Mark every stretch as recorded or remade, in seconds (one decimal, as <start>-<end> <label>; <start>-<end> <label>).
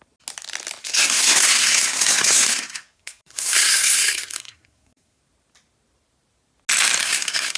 0.0-0.8 recorded; 0.8-5.2 remade; 5.2-7.0 recorded; 7.0-7.6 remade